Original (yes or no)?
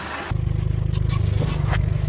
yes